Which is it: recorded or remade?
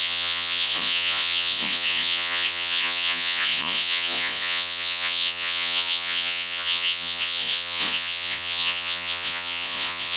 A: remade